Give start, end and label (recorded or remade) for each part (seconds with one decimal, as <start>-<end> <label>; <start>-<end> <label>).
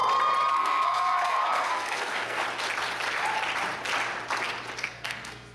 0.0-0.5 recorded; 0.5-2.4 remade; 2.4-4.8 recorded; 4.8-5.5 remade